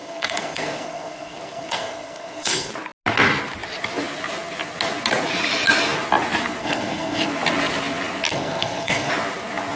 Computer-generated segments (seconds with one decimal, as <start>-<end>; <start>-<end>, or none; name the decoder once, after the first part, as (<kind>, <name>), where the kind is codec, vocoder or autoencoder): 0.0-2.7 (codec, SNAC); 6.6-7.3; 8.3-9.1